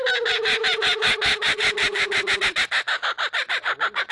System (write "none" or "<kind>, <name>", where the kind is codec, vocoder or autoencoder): none